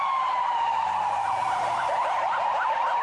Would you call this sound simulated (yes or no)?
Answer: yes